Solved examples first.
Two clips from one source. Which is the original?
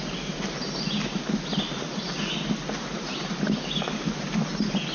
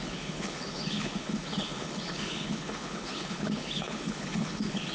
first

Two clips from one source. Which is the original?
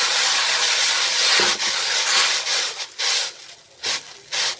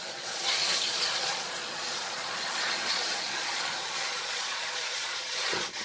first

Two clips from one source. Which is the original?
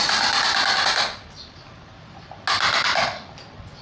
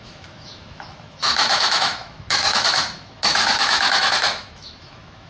first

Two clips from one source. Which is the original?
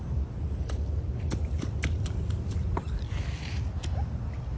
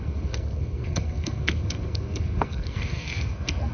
first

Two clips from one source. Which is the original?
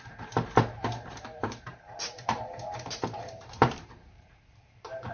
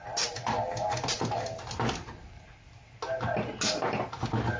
second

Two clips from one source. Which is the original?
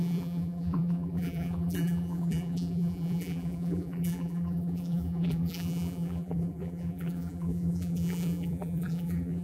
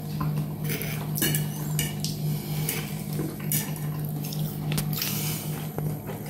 second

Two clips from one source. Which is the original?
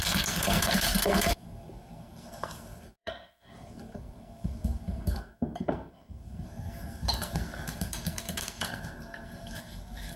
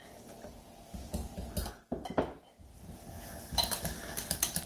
second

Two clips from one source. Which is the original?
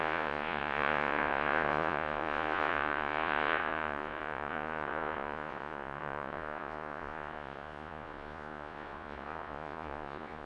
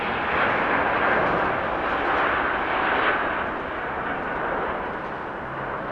second